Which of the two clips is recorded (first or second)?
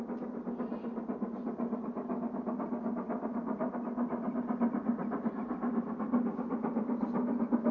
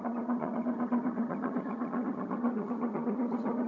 first